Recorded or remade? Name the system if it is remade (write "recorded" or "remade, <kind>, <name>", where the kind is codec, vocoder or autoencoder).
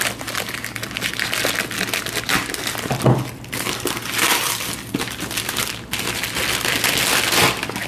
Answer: recorded